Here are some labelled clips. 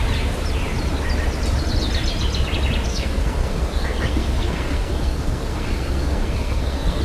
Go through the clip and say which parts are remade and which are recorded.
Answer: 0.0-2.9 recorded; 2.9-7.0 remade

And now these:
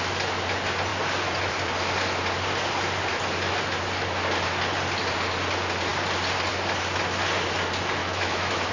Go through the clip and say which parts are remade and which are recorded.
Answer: 0.0-8.0 recorded; 8.0-8.7 remade

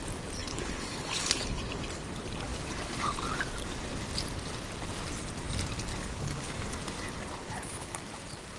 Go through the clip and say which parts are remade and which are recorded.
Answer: 0.0-0.4 recorded; 0.4-1.6 remade; 1.6-5.9 recorded; 5.9-6.4 remade; 6.4-7.4 recorded; 7.4-8.0 remade; 8.0-8.6 recorded

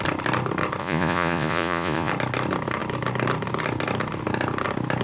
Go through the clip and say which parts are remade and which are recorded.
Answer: 0.0-0.8 recorded; 0.8-2.1 remade; 2.1-5.0 recorded

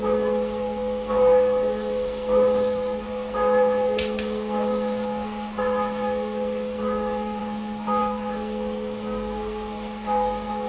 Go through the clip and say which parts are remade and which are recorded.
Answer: 0.0-10.7 remade

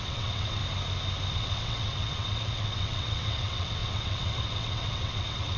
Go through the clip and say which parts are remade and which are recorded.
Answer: 0.0-0.6 remade; 0.6-1.3 recorded; 1.3-5.6 remade